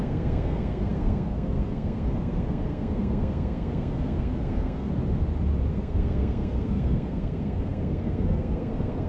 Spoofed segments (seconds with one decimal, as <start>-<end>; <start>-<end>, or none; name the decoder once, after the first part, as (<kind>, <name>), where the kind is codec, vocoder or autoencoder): 0.0-4.9 (codec, SNAC); 5.7-9.1